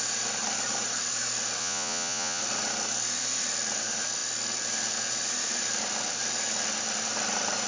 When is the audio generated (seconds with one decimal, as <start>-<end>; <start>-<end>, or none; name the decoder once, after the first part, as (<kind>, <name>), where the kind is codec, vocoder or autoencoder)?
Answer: 1.6-2.4 (vocoder, Vocos)